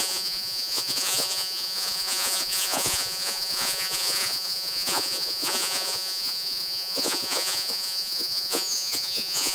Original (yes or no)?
no